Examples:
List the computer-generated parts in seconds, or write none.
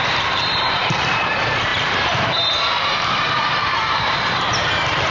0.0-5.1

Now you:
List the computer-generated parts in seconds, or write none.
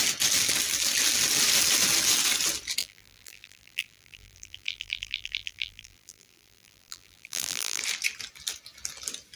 2.8-7.8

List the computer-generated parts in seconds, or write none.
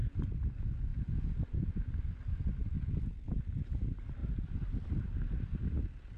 0.0-0.5; 4.2-5.1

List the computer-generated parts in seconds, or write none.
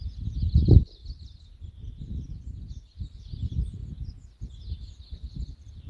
0.0-1.0; 2.3-3.8; 5.4-5.9